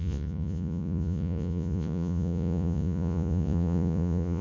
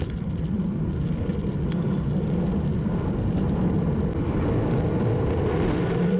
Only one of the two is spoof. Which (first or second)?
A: first